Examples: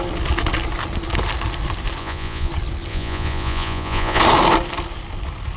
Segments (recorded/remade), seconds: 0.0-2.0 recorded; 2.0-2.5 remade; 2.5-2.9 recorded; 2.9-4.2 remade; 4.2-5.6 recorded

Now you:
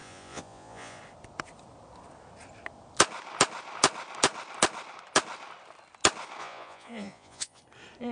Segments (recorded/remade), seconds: 0.0-1.0 remade; 1.0-6.4 recorded; 6.4-7.6 remade; 7.6-8.1 recorded